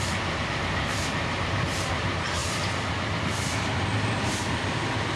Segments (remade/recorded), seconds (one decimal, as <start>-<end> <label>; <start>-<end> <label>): 0.0-2.4 remade; 2.4-4.4 recorded; 4.4-5.2 remade